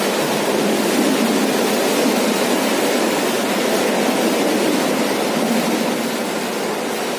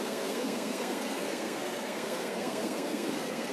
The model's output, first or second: second